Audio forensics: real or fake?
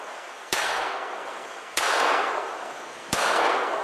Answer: fake